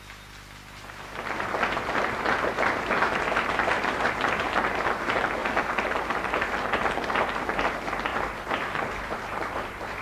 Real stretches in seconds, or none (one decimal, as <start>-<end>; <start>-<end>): 0.0-10.0